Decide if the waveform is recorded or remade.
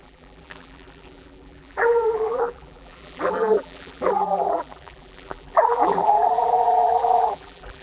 remade